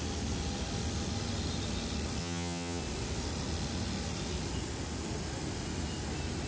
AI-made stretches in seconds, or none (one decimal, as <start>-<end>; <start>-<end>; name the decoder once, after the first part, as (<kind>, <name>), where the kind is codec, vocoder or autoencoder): 2.2-2.8 (vocoder, HiFi-GAN)